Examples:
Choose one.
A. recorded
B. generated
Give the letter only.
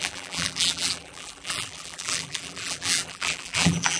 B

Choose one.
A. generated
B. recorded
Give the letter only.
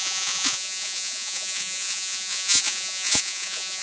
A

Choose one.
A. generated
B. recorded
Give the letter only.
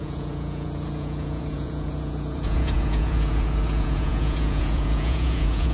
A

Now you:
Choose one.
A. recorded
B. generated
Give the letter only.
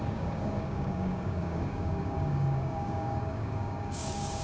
B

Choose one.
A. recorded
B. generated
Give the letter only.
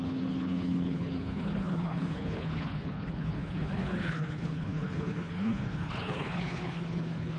B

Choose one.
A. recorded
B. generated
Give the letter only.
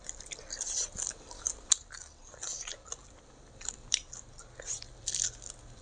A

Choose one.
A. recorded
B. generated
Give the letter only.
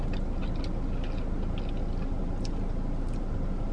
A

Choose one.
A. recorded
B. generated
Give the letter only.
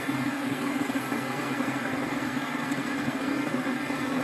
B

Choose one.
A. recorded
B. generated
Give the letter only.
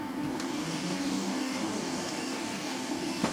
B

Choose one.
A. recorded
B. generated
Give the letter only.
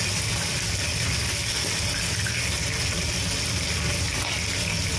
A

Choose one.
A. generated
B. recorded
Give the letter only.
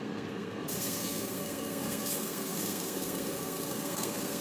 A